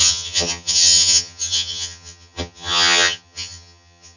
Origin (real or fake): fake